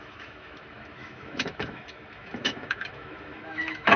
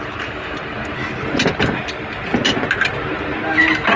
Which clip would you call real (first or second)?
second